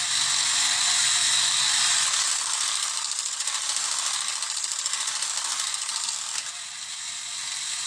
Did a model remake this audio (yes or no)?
no